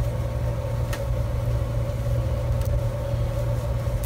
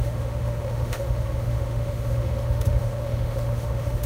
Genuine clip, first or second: first